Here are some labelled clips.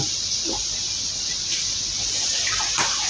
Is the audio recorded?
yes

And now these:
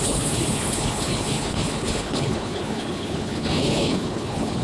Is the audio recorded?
no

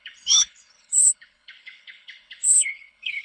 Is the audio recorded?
no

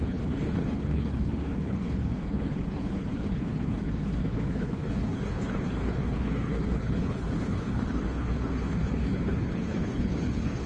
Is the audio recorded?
no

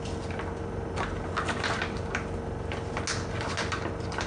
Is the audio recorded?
yes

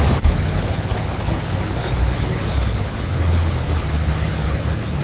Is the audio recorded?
no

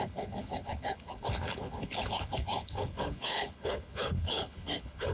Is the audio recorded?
no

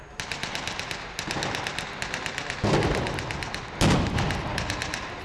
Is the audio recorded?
yes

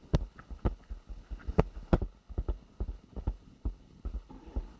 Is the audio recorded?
no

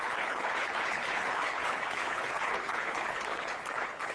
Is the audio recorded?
no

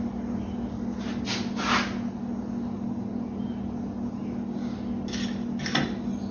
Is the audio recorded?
yes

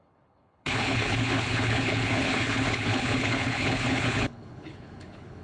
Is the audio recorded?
no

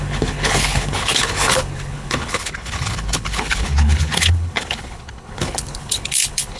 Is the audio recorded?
no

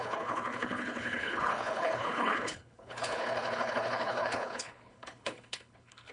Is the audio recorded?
no